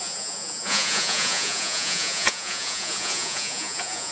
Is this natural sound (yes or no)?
no